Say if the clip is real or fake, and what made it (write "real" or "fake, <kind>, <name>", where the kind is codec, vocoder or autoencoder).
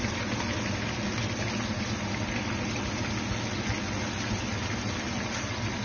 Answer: real